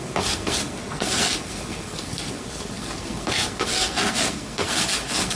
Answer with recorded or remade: remade